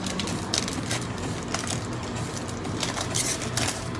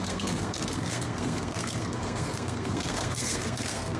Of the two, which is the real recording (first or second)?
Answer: first